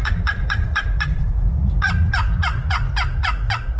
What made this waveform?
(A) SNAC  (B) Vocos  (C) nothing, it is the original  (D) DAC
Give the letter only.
B